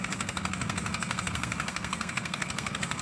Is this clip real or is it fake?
fake